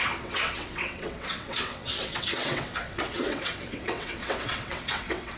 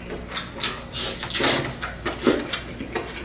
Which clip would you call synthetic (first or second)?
first